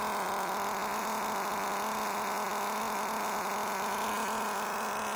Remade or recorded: recorded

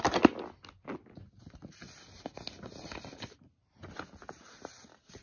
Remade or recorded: recorded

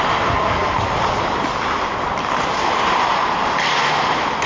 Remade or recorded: recorded